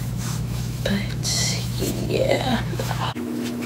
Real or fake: fake